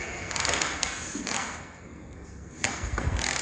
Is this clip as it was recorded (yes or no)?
no